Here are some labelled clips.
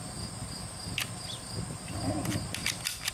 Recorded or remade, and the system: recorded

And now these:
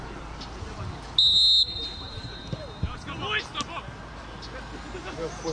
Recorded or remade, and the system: recorded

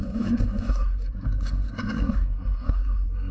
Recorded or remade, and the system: remade, codec, SNAC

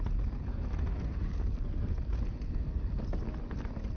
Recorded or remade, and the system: recorded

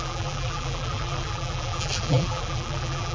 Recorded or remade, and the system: remade, vocoder, BigVGAN v2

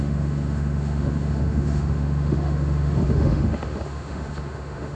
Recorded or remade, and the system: remade, autoencoder, DAC-VAE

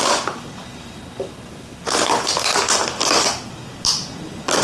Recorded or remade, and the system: recorded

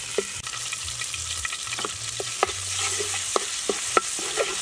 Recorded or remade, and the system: recorded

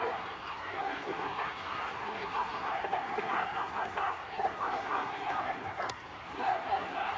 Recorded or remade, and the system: remade, codec, SNAC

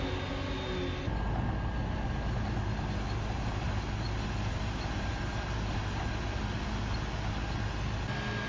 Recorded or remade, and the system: recorded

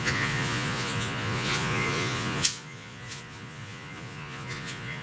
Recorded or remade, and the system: remade, vocoder, Vocos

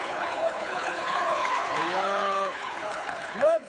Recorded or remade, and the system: remade, codec, HILCodec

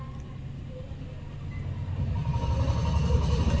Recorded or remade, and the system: recorded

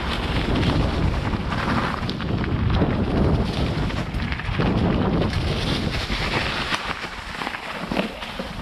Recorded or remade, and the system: recorded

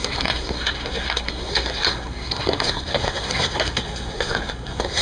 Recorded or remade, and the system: remade, codec, SNAC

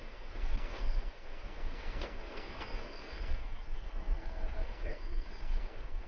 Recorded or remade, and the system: remade, codec, SNAC